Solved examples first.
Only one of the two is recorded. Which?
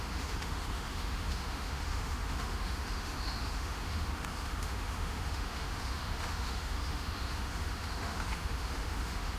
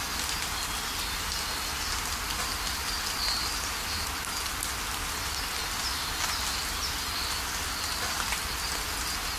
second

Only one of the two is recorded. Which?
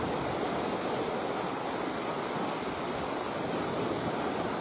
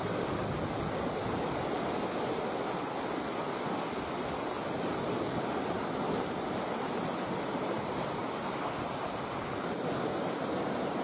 second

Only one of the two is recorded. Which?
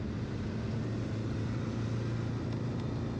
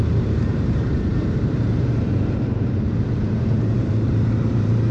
first